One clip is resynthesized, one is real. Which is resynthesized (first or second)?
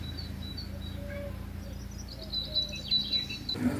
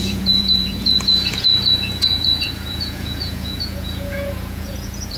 second